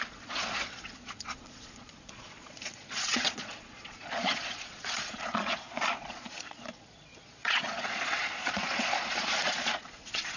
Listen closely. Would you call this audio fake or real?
fake